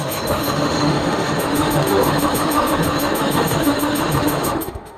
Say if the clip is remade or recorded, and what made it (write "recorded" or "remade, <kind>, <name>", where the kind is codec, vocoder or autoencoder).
remade, autoencoder, DAC-VAE